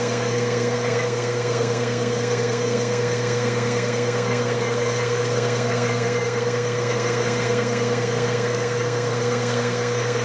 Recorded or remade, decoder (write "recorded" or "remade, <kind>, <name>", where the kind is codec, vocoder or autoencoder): remade, codec, SNAC